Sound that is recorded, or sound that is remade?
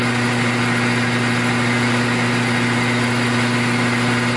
recorded